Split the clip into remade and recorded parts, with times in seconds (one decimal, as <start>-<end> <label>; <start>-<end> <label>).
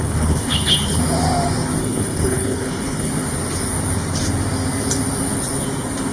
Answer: 0.0-1.0 remade; 1.0-1.8 recorded; 1.8-3.1 remade; 3.1-6.1 recorded